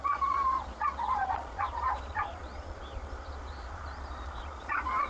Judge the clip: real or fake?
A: fake